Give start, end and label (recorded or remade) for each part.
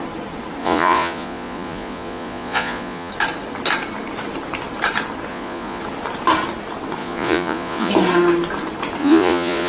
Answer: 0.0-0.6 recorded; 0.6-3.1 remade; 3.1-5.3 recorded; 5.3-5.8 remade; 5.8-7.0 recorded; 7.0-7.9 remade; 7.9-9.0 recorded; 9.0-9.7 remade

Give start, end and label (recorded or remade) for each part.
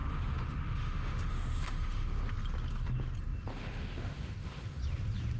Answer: 0.0-2.2 remade; 2.2-3.5 recorded; 3.5-4.8 remade; 4.8-5.4 recorded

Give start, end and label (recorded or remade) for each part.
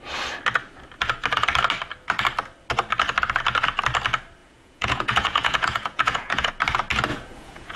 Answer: 0.0-4.4 recorded; 4.4-6.5 remade; 6.5-7.1 recorded; 7.1-7.8 remade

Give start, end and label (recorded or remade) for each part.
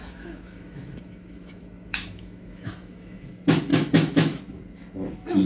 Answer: 0.0-3.3 remade; 3.3-3.7 recorded; 3.7-4.4 remade; 4.4-5.5 recorded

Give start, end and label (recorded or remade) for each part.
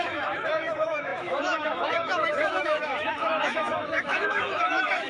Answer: 0.0-5.1 remade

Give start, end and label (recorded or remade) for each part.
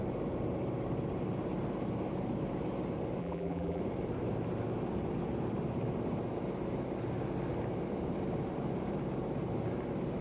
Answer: 0.0-3.2 recorded; 3.2-3.8 remade; 3.8-10.2 recorded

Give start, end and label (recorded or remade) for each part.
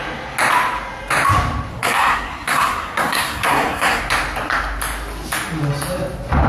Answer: 0.0-1.7 recorded; 1.7-4.0 remade; 4.0-6.5 recorded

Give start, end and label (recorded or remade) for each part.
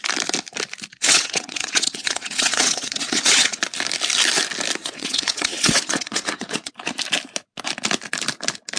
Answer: 0.0-0.9 recorded; 0.9-3.6 remade; 3.6-4.8 recorded; 4.8-6.7 remade; 6.7-8.8 recorded